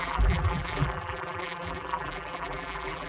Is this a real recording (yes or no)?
no